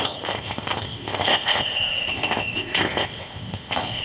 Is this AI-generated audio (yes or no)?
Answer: yes